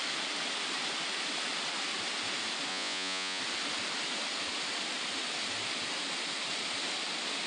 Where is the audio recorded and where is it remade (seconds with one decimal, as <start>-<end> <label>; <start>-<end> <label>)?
0.0-2.7 recorded; 2.7-3.4 remade; 3.4-7.5 recorded